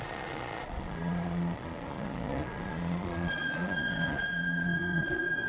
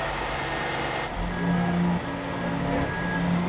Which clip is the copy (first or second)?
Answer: first